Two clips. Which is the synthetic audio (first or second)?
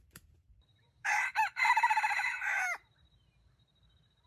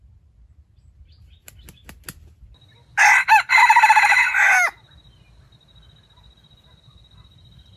first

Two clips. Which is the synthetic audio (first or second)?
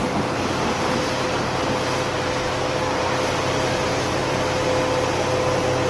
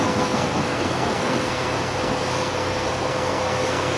second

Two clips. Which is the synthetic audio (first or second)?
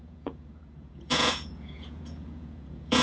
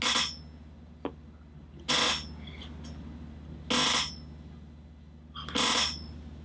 first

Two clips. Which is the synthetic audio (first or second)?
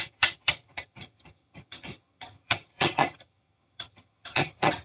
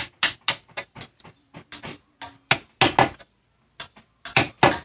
first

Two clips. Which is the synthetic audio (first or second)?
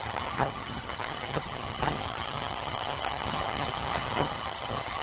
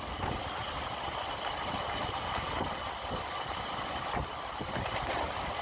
first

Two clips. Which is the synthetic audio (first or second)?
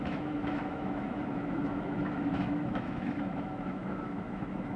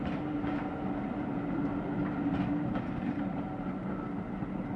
first